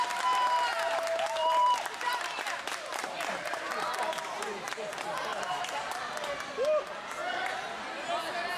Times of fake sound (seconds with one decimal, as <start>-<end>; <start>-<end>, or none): 1.4-3.8; 5.3-6.1